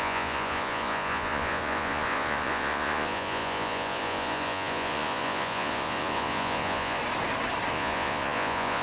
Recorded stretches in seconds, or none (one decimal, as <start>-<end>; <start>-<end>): 7.0-7.7